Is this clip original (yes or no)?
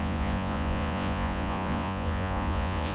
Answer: no